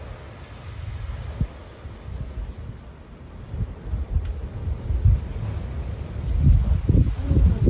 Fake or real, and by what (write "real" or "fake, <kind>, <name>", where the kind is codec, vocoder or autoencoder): real